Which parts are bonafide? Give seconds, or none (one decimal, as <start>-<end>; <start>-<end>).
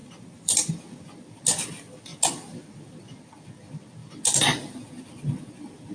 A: 0.7-5.9